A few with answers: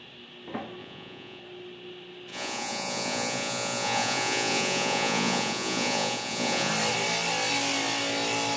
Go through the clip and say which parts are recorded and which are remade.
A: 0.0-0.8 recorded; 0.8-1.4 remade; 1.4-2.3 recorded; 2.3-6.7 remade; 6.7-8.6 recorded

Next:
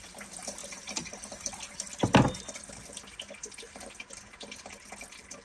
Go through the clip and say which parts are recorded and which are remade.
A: 0.0-5.4 recorded

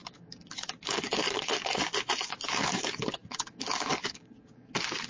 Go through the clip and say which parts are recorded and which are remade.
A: 0.0-5.1 remade